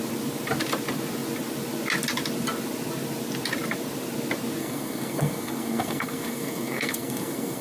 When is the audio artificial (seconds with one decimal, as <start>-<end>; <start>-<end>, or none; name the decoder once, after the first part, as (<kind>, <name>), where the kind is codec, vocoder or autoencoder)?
4.6-7.6 (codec, SNAC)